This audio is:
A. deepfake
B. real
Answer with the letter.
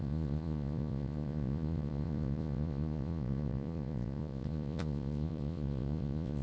A